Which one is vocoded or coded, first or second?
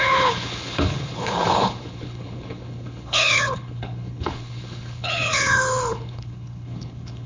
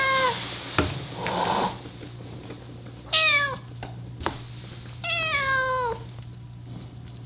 first